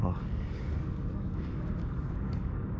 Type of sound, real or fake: fake